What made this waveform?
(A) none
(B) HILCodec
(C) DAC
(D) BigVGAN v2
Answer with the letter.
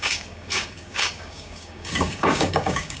C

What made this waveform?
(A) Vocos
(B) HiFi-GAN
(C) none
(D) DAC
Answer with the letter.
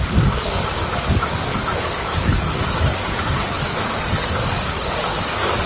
D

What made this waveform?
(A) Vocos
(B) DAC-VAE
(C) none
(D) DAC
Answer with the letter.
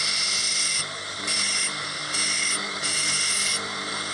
C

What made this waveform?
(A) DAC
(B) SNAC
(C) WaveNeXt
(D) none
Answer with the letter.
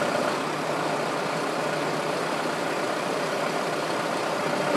D